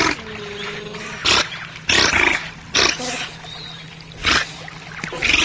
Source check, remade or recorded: recorded